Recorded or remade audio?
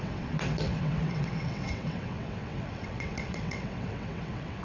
remade